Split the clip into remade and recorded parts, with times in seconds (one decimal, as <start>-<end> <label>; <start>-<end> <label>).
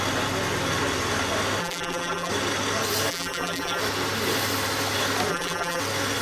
0.0-1.6 recorded; 1.6-2.3 remade; 2.3-3.1 recorded; 3.1-3.8 remade; 3.8-5.3 recorded; 5.3-5.8 remade; 5.8-6.2 recorded